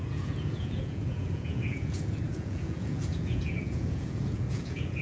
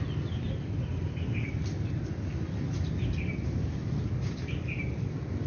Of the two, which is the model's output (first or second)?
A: first